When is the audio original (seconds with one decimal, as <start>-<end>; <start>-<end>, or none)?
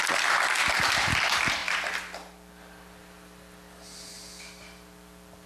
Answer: 0.0-5.5